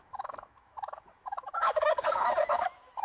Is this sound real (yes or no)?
no